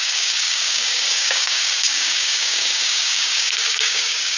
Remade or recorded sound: remade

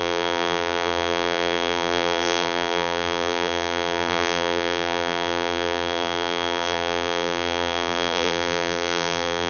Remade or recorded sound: remade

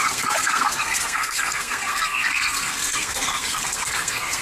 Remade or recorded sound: remade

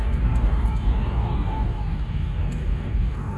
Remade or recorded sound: remade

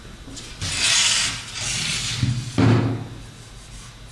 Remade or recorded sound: recorded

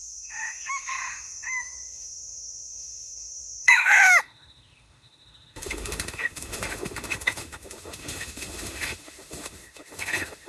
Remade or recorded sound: remade